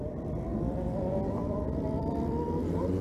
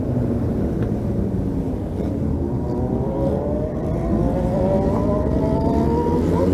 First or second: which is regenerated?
first